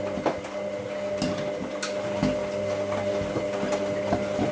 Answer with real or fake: real